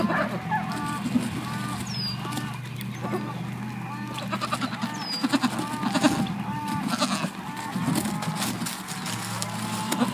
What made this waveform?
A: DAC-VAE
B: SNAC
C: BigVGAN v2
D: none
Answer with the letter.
D